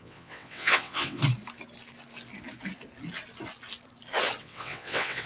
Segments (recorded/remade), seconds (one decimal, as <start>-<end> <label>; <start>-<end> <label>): 0.0-1.2 remade; 1.2-4.4 recorded; 4.4-5.3 remade